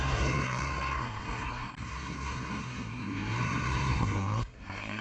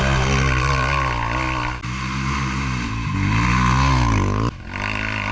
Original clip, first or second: second